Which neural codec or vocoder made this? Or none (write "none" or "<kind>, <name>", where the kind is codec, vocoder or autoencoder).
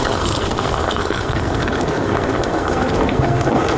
codec, SNAC